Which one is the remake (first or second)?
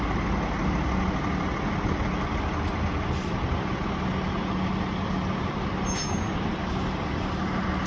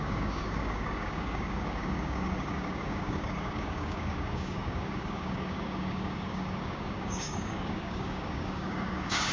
second